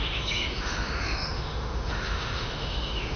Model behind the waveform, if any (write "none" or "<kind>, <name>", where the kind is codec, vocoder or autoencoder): autoencoder, DAC-VAE